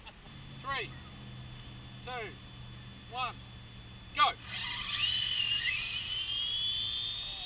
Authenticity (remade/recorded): recorded